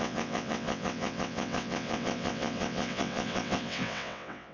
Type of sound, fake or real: fake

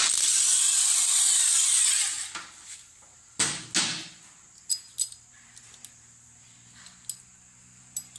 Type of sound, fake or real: real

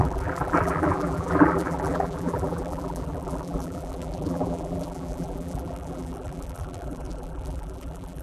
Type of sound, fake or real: fake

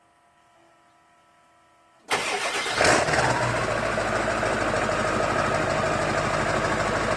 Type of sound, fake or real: real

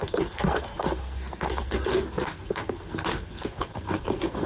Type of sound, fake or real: fake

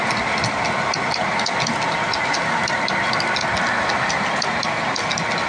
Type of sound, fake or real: real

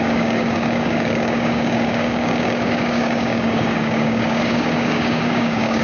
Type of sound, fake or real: fake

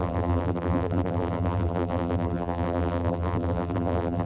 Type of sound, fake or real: fake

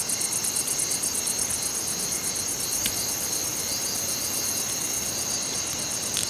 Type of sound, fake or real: real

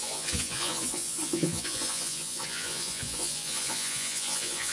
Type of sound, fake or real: fake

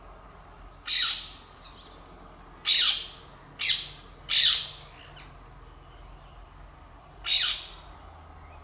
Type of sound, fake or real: real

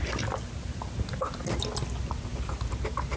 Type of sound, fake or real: real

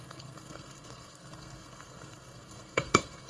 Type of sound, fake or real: fake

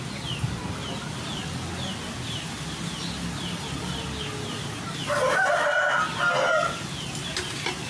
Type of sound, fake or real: real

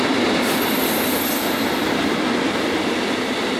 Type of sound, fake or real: real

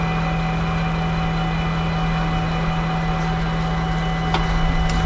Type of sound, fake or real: real